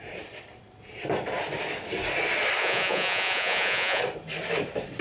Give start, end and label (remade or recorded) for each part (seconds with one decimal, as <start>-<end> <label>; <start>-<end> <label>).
0.0-2.6 recorded; 2.6-4.0 remade; 4.0-5.0 recorded